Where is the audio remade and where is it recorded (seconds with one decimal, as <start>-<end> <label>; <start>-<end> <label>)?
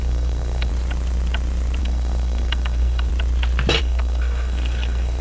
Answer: 0.0-0.7 remade; 0.7-1.8 recorded; 1.8-3.1 remade; 3.1-3.8 recorded; 3.8-5.2 remade